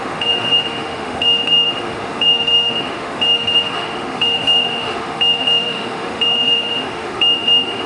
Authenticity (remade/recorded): remade